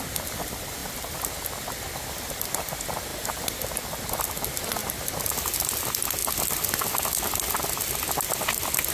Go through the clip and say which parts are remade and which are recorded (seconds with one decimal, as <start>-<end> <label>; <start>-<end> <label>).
0.0-8.9 recorded